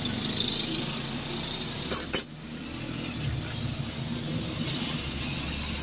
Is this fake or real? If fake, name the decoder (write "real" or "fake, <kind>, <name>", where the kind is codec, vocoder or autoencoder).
real